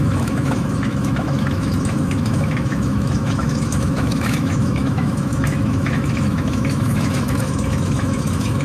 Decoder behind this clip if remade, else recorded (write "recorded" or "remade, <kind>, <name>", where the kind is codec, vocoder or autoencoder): remade, autoencoder, DAC-VAE